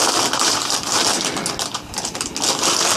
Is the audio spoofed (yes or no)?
no